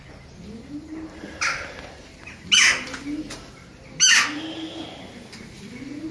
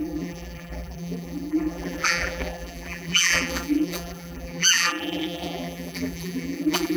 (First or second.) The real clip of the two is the first